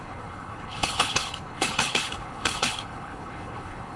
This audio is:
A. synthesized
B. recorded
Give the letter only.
A